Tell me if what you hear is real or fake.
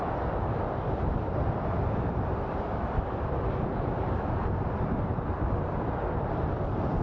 fake